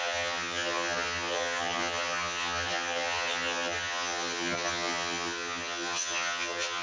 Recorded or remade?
remade